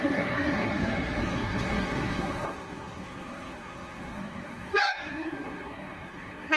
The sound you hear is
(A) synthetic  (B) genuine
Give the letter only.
A